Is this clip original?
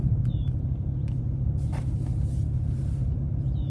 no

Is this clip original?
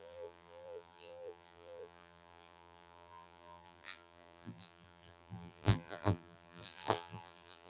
no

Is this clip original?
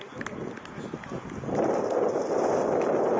yes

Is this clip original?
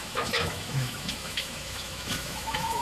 no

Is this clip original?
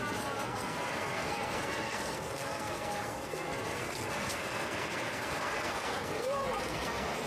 no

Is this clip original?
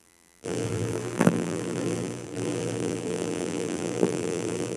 no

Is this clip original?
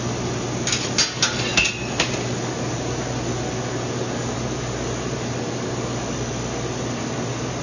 yes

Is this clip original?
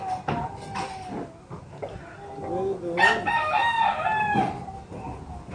yes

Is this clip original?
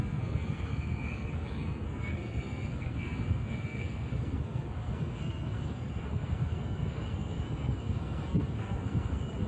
no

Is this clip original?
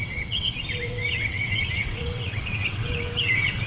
no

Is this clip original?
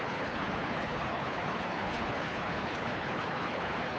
no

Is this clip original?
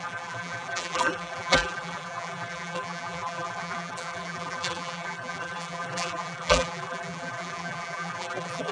no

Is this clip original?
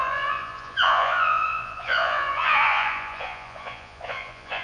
no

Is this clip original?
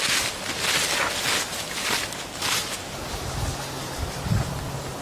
yes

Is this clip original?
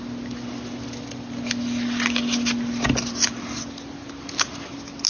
yes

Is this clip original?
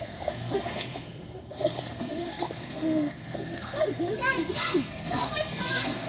no